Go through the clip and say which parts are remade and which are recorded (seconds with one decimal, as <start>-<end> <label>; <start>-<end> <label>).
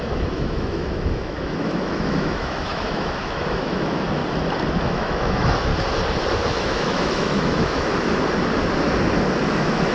0.0-4.2 remade; 4.2-4.8 recorded; 4.8-5.7 remade; 5.7-6.5 recorded; 6.5-7.9 remade; 7.9-9.5 recorded; 9.5-9.9 remade